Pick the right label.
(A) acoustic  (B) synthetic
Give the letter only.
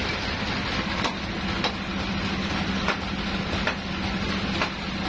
A